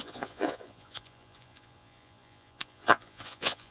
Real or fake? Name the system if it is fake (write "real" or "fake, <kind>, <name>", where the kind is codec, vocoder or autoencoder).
fake, vocoder, Vocos